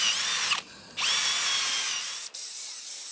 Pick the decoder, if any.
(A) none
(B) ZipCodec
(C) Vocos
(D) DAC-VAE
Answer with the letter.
A